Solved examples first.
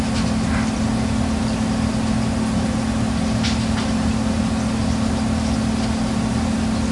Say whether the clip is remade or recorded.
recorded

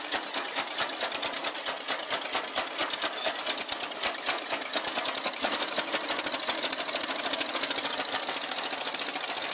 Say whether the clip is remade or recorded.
recorded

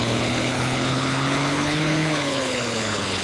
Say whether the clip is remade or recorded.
remade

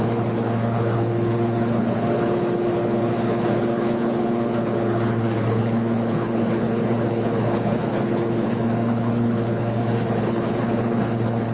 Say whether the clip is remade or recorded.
remade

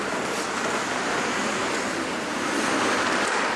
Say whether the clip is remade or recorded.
recorded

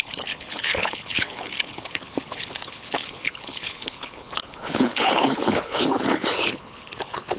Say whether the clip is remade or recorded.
remade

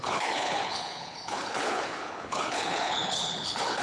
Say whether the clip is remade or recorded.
remade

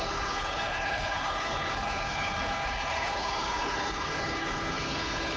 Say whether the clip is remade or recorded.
remade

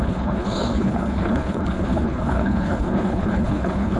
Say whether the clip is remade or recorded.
remade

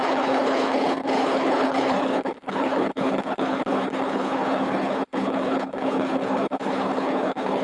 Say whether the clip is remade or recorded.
remade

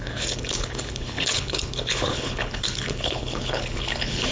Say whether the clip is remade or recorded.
remade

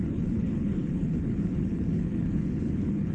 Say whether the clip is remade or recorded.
remade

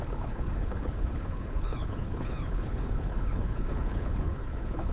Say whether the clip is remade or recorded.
remade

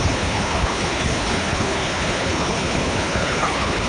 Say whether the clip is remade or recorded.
remade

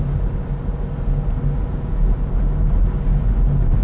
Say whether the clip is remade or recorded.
recorded